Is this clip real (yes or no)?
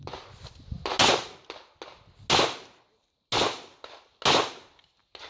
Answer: yes